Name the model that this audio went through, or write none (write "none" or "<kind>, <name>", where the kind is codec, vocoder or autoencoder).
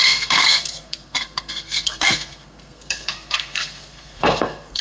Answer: codec, SNAC